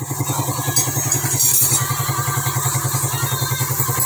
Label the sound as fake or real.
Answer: real